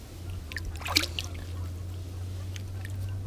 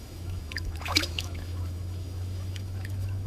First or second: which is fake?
second